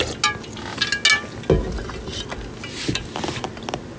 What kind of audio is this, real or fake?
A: real